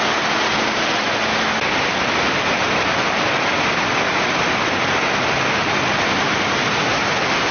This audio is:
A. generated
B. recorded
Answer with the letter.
B